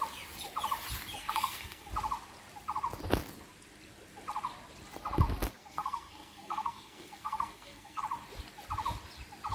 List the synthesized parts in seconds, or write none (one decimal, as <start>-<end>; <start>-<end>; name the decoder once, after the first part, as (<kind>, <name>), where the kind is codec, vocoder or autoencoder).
1.2-1.9 (codec, SNAC); 5.6-8.0

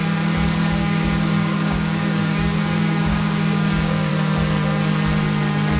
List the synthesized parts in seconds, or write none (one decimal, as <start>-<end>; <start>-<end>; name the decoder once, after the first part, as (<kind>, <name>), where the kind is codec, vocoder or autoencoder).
0.6-4.1 (codec, DAC)